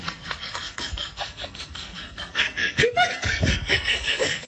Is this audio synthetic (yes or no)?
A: yes